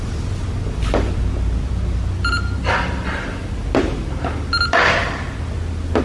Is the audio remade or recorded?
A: remade